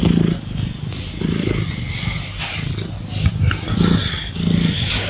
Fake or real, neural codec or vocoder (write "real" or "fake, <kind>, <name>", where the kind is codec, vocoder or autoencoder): real